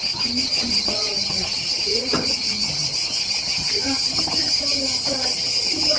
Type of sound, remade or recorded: remade